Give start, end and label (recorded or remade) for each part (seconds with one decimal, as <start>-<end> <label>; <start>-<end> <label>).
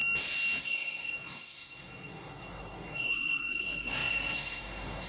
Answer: 0.0-0.6 recorded; 0.6-5.1 remade